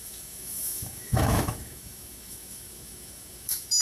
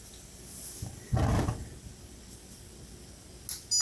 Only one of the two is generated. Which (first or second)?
first